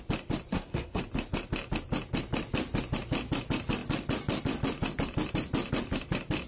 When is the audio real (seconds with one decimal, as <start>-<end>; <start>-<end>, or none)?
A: 0.0-0.5; 1.0-6.5

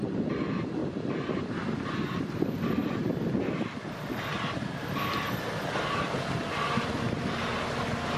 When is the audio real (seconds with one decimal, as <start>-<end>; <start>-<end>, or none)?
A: 0.0-8.2

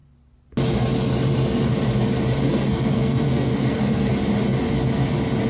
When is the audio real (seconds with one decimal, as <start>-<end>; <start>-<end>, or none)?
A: 0.0-2.5; 4.1-5.5

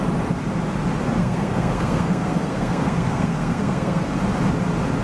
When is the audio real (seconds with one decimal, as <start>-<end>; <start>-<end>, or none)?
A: 0.0-1.2; 4.2-5.0

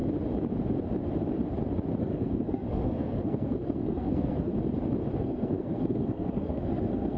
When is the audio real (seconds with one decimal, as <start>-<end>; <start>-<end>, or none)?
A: 0.0-2.0; 4.5-5.2